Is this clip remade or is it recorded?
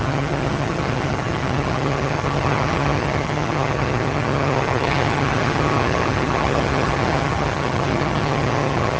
remade